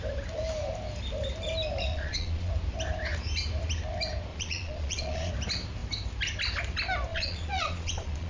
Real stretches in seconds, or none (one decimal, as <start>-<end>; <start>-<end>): 0.0-1.9; 2.5-4.3; 5.3-7.1